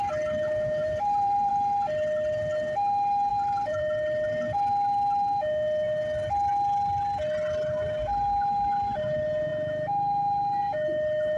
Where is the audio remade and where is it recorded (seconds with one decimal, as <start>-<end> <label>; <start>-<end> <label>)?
0.0-0.8 recorded; 0.8-1.5 remade; 1.5-3.3 recorded; 3.3-3.8 remade; 3.8-11.4 recorded